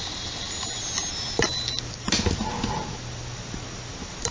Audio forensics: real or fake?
real